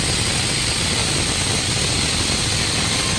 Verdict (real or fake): real